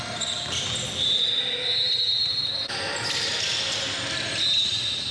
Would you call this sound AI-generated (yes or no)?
no